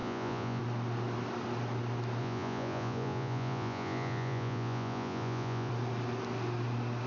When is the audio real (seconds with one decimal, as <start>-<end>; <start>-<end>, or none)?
0.6-2.2; 5.7-7.1